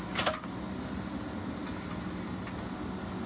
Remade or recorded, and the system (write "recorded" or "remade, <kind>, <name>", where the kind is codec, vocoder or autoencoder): recorded